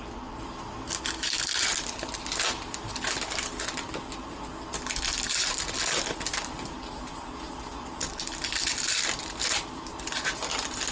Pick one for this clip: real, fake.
real